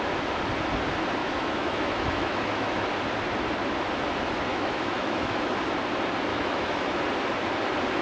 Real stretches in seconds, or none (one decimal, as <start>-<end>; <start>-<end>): 0.0-1.2; 2.9-4.5; 5.5-6.3; 7.0-8.0